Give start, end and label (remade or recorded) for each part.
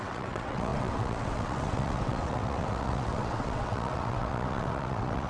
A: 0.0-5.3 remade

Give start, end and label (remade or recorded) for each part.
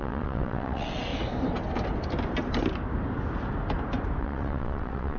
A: 0.0-1.1 remade; 1.1-4.2 recorded; 4.2-5.2 remade